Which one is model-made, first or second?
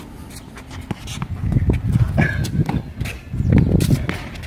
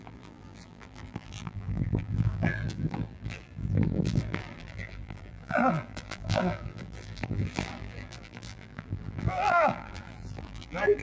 second